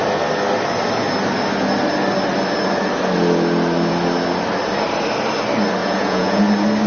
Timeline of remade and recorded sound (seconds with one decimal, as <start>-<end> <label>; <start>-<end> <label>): 0.0-5.8 recorded; 5.8-6.4 remade; 6.4-6.9 recorded